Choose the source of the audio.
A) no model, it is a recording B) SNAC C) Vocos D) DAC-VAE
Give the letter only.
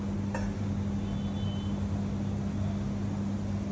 A